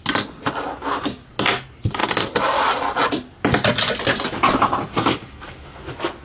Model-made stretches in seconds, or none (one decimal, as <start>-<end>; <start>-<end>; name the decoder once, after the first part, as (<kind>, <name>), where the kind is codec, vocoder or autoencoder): 0.7-1.3 (codec, SNAC); 4.9-5.8